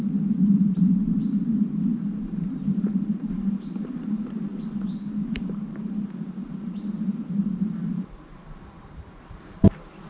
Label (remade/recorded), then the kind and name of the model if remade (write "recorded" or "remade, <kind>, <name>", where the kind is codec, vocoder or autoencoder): remade, vocoder, BigVGAN v2